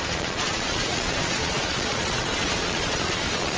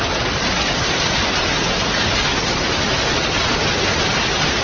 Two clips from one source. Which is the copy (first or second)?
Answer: first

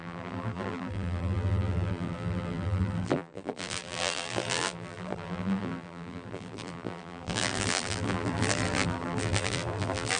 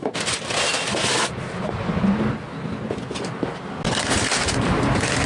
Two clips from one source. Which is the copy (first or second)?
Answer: first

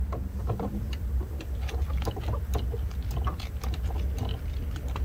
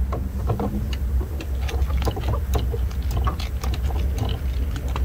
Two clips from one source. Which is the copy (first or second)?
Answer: first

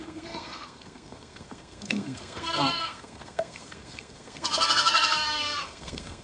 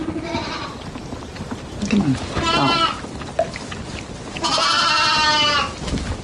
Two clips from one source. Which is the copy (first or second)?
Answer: first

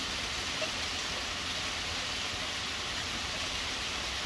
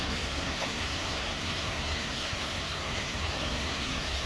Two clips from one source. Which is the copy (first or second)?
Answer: second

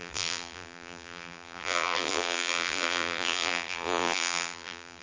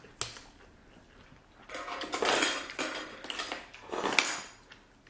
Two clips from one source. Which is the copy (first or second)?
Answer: first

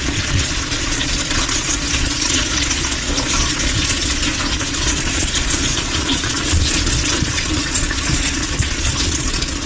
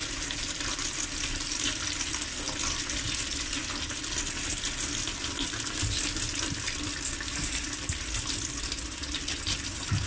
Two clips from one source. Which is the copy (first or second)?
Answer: first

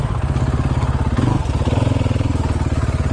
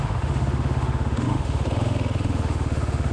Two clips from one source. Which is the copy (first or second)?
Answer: second